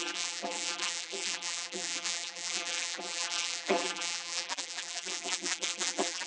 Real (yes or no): no